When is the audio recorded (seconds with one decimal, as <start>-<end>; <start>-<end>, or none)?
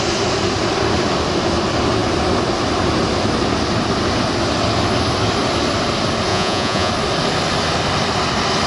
0.0-6.3; 6.9-8.7